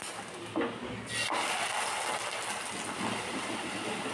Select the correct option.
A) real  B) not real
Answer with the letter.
A